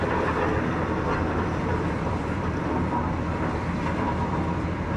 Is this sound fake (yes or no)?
yes